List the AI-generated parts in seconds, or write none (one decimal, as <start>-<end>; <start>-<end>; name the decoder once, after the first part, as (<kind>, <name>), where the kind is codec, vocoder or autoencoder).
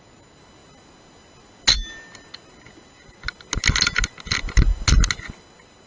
none